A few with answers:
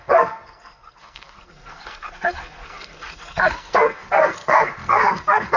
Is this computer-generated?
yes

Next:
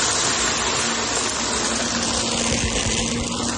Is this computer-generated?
no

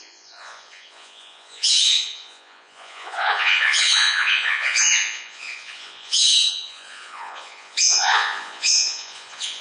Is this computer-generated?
yes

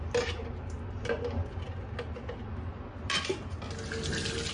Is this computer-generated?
no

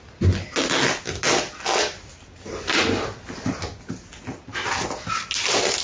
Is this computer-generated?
no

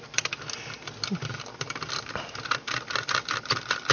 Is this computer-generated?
no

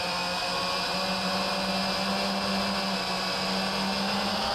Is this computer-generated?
no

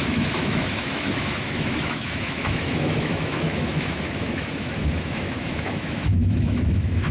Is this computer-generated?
yes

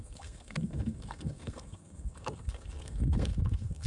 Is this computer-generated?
yes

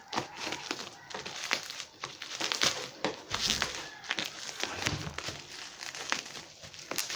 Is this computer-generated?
no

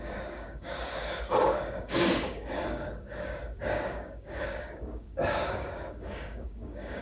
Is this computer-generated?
yes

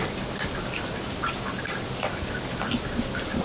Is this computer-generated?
no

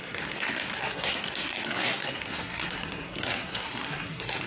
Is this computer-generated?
yes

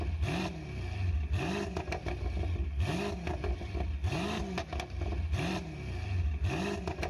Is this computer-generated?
no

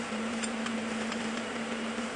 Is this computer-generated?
yes